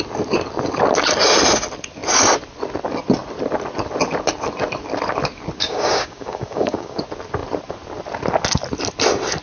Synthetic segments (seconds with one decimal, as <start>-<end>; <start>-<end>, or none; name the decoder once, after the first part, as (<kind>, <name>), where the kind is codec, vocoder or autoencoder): 5.6-7.0 (codec, DAC)